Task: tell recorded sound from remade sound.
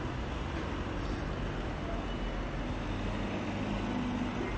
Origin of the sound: recorded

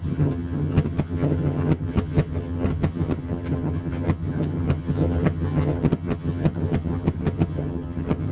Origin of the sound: remade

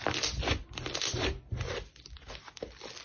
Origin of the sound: recorded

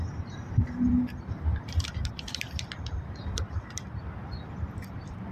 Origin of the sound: remade